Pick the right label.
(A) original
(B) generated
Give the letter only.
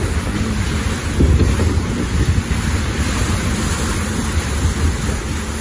A